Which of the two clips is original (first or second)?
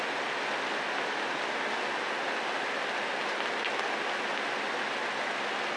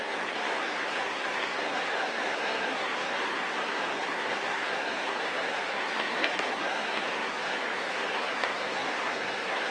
first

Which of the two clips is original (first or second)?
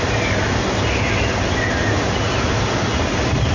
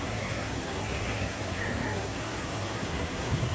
first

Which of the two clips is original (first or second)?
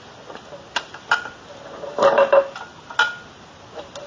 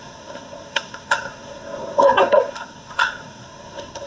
first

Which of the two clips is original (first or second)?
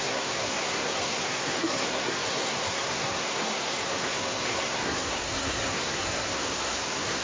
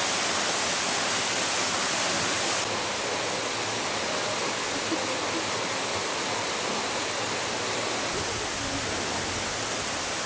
second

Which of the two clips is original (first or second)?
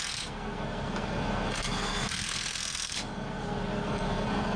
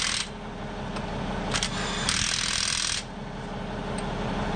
second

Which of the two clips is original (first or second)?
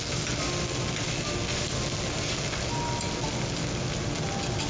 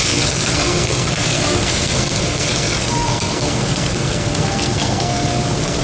first